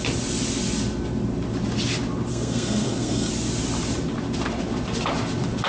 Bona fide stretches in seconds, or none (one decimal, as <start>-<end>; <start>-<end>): 0.0-2.3; 3.3-5.7

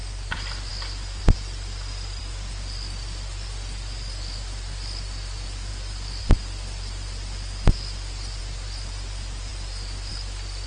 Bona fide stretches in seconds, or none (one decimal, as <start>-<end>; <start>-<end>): 0.0-10.7

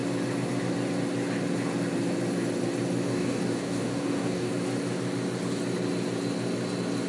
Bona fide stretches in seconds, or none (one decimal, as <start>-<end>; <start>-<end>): 0.0-3.1; 4.5-7.1

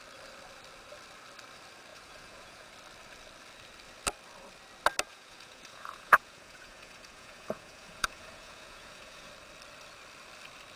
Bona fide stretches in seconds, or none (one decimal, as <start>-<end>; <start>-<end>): 0.0-1.9; 2.7-5.1; 9.3-10.8

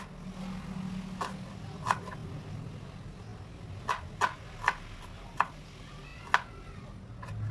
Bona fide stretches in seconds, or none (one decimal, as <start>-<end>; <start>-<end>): 0.0-7.5